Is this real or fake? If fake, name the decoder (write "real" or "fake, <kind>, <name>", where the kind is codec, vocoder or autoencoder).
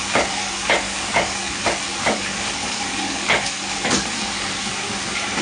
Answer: fake, codec, DAC